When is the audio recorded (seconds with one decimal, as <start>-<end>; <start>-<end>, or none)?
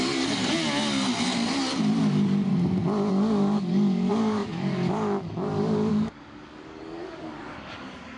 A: 0.4-2.0; 2.5-3.1